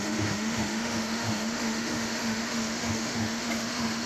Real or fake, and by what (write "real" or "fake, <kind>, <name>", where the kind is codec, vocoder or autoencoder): fake, autoencoder, DAC-VAE